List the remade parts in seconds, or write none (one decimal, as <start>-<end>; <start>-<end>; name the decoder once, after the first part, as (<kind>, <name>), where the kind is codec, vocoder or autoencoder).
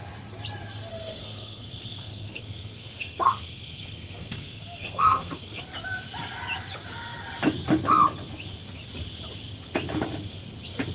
0.9-5.6 (codec, SNAC)